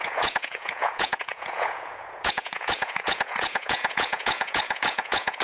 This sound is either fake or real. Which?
fake